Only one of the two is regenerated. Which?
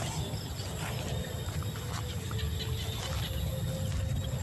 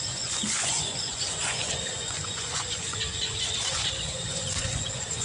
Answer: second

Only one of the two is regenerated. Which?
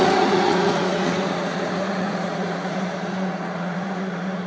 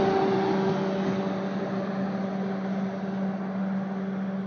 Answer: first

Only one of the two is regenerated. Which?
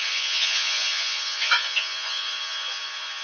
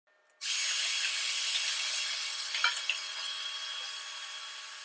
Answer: first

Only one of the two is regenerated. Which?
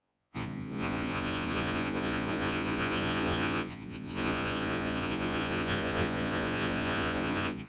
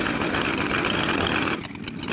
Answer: first